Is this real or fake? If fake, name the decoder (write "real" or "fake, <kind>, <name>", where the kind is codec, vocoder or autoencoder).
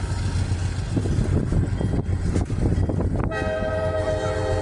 real